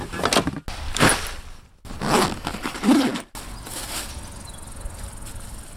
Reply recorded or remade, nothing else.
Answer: recorded